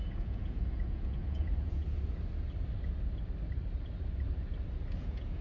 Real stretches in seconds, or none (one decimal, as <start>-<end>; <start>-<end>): 1.8-5.0